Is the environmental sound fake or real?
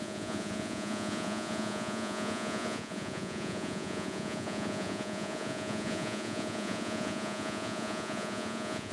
fake